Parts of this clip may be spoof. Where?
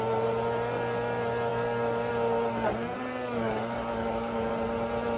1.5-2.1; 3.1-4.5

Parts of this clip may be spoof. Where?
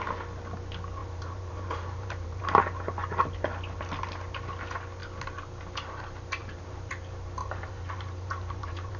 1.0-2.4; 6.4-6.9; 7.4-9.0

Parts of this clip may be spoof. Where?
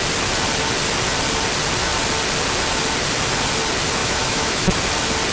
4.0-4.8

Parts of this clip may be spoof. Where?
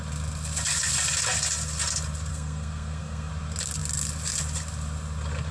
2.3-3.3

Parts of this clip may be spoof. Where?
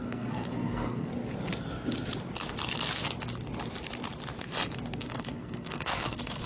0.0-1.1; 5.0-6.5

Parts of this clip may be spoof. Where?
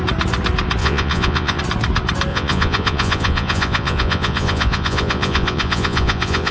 0.8-1.6; 2.3-6.5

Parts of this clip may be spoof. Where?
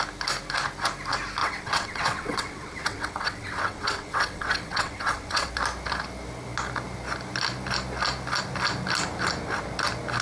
1.4-5.5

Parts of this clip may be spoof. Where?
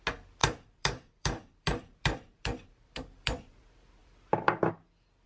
0.4-3.6; 4.0-4.7